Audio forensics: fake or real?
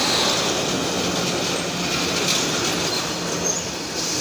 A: real